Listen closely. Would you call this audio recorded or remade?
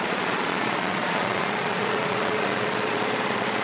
remade